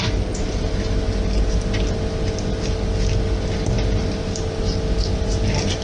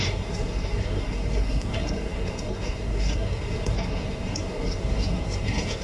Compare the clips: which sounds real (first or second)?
first